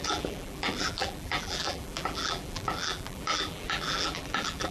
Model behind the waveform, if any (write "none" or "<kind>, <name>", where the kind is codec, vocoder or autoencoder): vocoder, BigVGAN v2